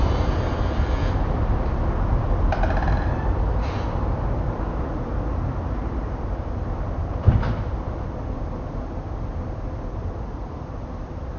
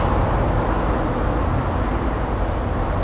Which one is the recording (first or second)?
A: second